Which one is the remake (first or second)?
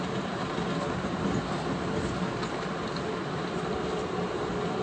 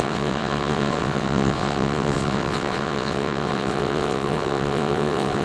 second